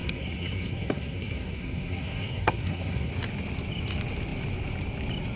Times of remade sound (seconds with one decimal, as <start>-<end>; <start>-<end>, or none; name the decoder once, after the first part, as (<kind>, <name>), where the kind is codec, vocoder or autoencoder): 0.0-3.1 (codec, SNAC)